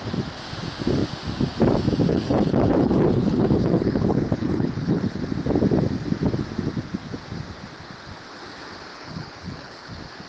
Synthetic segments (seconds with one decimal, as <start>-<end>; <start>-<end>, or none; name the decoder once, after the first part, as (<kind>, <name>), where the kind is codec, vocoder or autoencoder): 2.1-5.2 (codec, HILCodec); 8.9-9.9